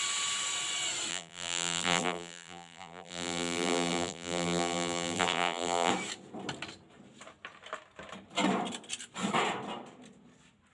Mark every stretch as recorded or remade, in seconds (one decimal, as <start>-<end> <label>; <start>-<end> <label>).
0.0-1.1 recorded; 1.1-5.9 remade; 5.9-10.7 recorded